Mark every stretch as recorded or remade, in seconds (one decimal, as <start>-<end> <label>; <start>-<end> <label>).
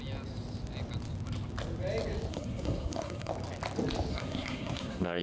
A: 0.0-2.3 recorded; 2.3-3.3 remade; 3.3-4.1 recorded; 4.1-5.2 remade